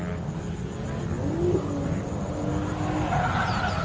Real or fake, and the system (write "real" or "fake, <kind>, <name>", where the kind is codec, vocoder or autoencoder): real